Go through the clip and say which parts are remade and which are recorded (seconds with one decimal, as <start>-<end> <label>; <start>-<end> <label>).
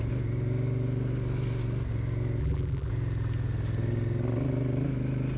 0.0-2.4 recorded; 2.4-2.9 remade; 2.9-5.4 recorded